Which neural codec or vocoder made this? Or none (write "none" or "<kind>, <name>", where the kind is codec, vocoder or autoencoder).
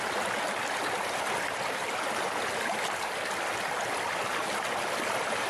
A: none